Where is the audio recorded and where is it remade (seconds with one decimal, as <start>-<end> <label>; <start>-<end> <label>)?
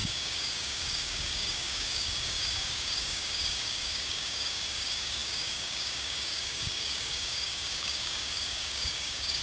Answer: 0.0-9.4 remade